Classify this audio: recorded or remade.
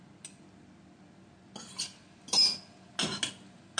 recorded